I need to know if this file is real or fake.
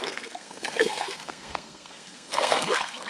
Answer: fake